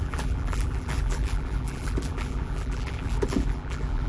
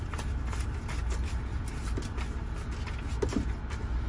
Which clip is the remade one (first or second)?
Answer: first